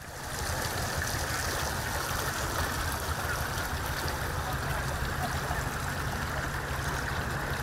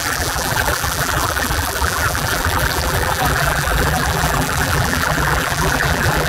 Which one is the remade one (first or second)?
second